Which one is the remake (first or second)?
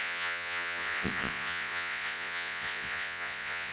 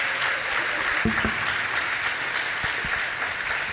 first